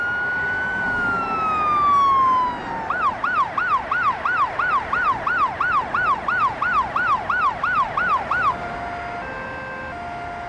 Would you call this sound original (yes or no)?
yes